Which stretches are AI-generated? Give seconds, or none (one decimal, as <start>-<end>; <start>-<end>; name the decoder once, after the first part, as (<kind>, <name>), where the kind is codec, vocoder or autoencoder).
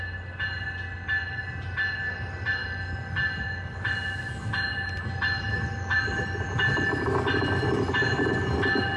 none